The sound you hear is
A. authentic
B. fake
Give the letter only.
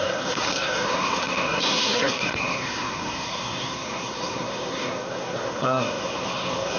B